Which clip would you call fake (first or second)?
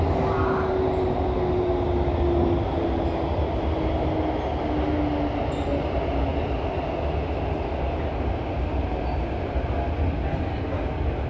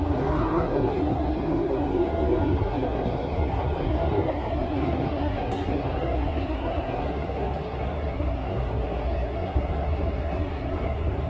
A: second